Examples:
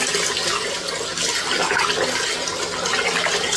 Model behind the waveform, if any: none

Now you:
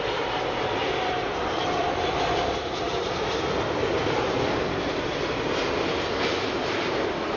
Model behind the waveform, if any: vocoder, BigVGAN v2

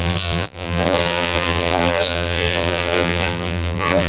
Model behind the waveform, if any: vocoder, BigVGAN v2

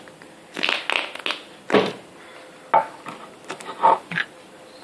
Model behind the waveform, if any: none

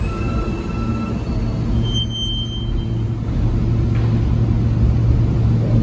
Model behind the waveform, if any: none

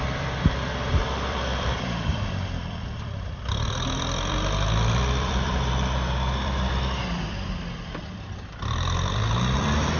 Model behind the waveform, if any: vocoder, BigVGAN v2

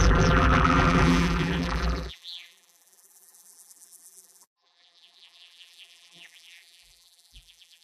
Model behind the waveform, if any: vocoder, BigVGAN v2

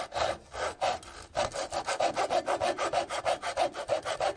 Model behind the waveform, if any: none